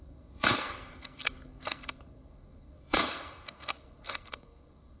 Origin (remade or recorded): remade